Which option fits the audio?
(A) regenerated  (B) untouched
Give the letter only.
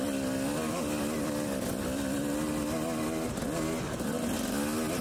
B